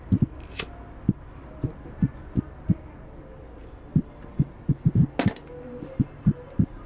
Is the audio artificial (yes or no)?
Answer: no